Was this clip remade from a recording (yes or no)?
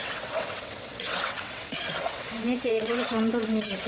yes